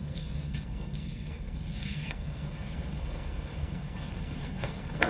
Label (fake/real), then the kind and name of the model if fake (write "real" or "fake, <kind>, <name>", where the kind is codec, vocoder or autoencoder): fake, codec, SNAC